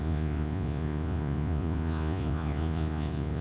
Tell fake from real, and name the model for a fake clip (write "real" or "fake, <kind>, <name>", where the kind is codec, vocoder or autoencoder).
fake, vocoder, Vocos